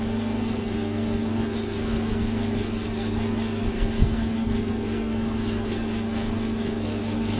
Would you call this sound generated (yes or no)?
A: yes